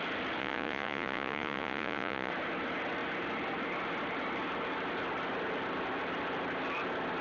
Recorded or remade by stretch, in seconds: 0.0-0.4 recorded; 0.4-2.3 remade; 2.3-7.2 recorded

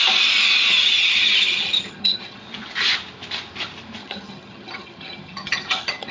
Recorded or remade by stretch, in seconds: 0.0-0.8 recorded; 0.8-2.4 remade; 2.4-4.0 recorded; 4.0-6.1 remade